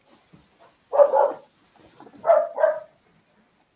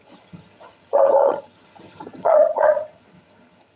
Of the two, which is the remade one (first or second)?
second